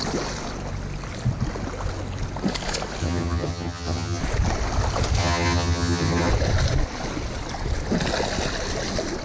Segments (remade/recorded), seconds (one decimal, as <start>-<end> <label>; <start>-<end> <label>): 0.0-3.0 recorded; 3.0-4.2 remade; 4.2-5.2 recorded; 5.2-6.3 remade; 6.3-9.2 recorded